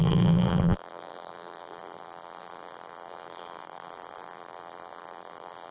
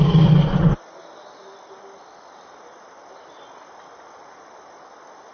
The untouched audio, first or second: second